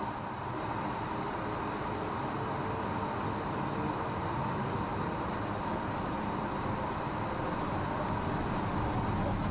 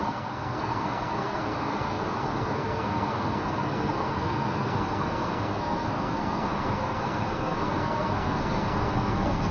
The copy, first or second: second